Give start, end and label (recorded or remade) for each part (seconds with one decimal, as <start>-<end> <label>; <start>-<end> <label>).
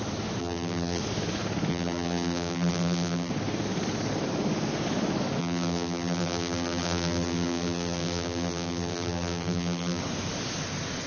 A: 0.0-0.4 recorded; 0.4-1.0 remade; 1.0-1.7 recorded; 1.7-3.3 remade; 3.3-5.4 recorded; 5.4-10.0 remade; 10.0-11.1 recorded